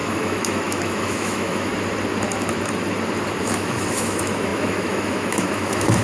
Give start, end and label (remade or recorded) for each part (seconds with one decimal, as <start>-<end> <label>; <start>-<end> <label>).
0.0-1.7 remade; 1.7-3.4 recorded; 3.4-6.0 remade